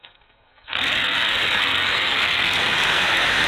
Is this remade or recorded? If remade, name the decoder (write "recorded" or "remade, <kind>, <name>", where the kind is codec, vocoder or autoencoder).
remade, codec, SNAC